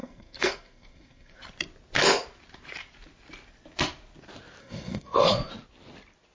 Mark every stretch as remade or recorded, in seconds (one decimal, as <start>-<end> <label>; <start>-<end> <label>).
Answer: 0.0-1.4 remade; 1.4-4.6 recorded; 4.6-5.5 remade; 5.5-6.3 recorded